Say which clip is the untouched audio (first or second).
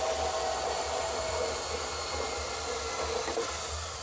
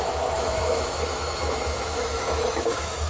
first